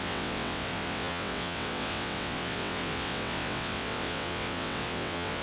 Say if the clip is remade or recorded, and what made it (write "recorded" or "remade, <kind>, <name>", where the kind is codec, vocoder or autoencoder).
remade, vocoder, WaveNeXt